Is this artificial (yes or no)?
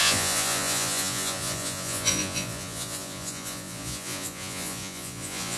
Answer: yes